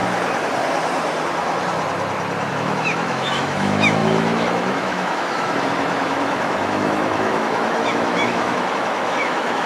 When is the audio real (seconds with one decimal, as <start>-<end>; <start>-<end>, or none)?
0.0-2.5